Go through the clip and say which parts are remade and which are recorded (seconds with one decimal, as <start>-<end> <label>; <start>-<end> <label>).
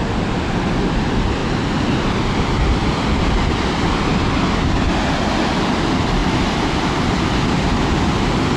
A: 0.0-8.6 recorded